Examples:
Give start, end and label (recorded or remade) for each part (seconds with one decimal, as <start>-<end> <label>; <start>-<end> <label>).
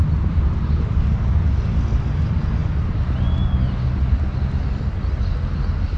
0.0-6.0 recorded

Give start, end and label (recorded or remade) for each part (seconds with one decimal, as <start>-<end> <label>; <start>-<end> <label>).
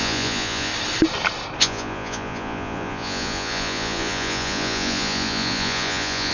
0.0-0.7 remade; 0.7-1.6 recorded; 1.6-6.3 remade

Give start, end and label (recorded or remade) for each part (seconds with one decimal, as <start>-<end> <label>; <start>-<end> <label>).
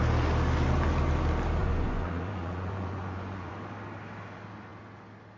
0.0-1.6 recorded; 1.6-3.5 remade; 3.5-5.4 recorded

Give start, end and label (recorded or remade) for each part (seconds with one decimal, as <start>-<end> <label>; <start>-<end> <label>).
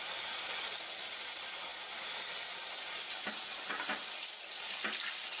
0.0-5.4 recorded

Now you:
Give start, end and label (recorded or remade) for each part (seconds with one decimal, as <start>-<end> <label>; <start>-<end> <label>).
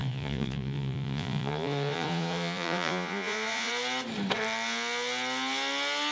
0.0-3.7 remade; 3.7-6.1 recorded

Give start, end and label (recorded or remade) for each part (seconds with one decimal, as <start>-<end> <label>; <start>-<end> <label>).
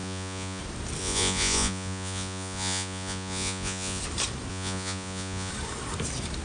0.0-0.6 remade; 0.6-1.0 recorded; 1.0-4.0 remade; 4.0-4.5 recorded; 4.5-5.5 remade; 5.5-6.4 recorded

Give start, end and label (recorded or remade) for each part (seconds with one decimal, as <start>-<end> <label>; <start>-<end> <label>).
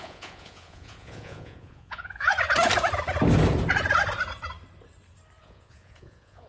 0.0-2.3 remade; 2.3-5.4 recorded; 5.4-6.5 remade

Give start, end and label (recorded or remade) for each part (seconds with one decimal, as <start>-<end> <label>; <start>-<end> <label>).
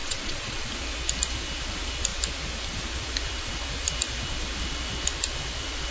0.0-0.7 remade; 0.7-5.9 recorded